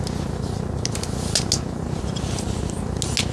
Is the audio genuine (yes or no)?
yes